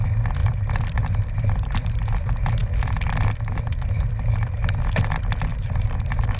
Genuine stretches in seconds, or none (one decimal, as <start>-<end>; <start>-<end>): 0.0-0.4; 2.2-5.5

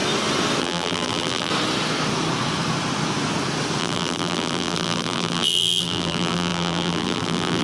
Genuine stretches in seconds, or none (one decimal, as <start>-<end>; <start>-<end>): 0.0-0.6; 1.5-3.8

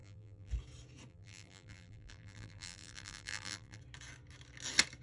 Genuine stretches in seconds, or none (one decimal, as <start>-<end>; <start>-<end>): 0.5-1.1; 3.8-5.0

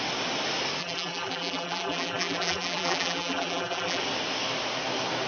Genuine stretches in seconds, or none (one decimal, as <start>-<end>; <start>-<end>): 0.0-0.8; 4.0-5.3